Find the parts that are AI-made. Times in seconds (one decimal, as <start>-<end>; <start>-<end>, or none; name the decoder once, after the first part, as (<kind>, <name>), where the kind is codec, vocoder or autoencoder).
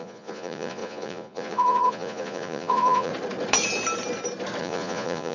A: 0.0-3.1 (vocoder, Vocos); 4.6-5.3